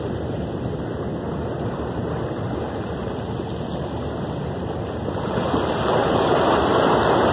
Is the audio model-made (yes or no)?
no